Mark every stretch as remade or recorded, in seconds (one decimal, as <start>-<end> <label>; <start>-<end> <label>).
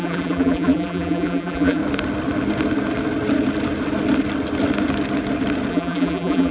0.0-1.8 remade; 1.8-5.7 recorded; 5.7-6.5 remade